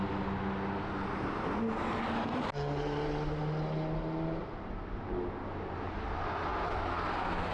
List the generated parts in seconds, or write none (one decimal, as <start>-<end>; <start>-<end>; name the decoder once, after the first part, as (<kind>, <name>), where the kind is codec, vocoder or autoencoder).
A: none